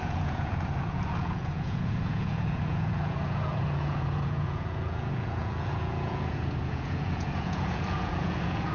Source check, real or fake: fake